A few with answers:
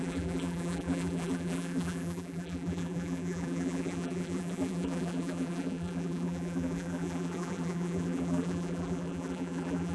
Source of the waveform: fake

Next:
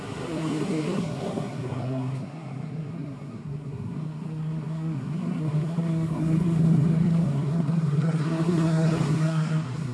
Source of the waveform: fake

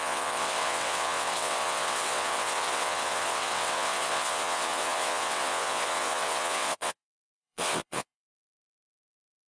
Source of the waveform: fake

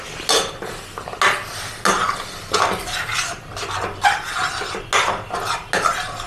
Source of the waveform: real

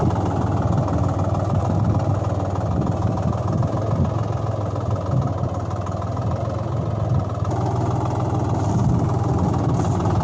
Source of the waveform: real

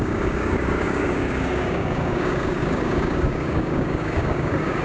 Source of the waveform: fake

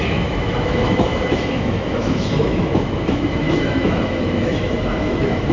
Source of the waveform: fake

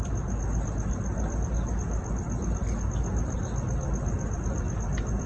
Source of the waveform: real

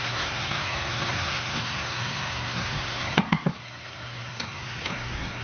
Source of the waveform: fake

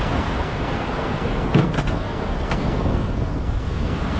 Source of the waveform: fake